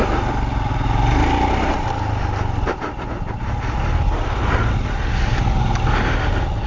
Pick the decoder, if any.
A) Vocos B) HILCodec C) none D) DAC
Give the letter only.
C